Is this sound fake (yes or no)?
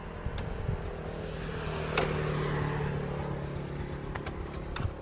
no